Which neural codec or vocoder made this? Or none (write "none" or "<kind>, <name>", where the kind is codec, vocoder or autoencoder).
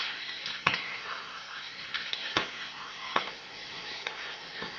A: codec, SNAC